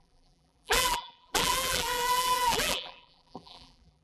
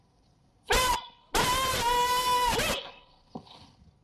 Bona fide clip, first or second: second